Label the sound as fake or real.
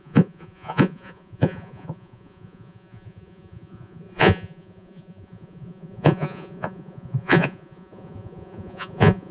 fake